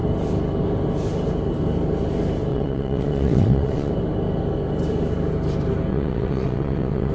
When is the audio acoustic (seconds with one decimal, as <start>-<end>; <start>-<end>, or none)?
0.0-2.5; 3.9-5.9